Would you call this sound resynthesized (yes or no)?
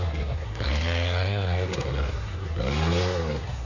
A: yes